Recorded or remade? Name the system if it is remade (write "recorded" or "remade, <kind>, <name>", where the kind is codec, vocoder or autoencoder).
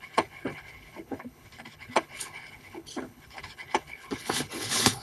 remade, codec, HILCodec